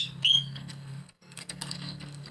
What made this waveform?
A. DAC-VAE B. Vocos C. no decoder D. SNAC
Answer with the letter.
D